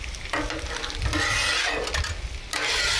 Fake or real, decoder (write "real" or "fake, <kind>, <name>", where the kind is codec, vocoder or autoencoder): real